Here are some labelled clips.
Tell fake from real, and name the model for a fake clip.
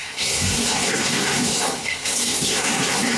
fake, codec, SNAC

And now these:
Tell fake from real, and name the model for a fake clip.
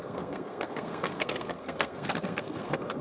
fake, codec, SNAC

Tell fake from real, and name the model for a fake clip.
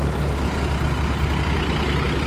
real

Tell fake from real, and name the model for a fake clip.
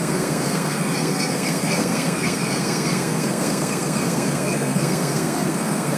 fake, codec, SNAC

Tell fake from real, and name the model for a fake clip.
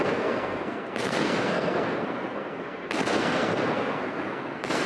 fake, codec, SNAC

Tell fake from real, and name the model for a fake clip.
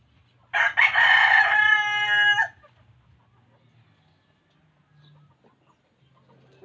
real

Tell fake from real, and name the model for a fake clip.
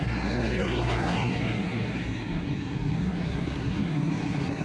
fake, codec, SNAC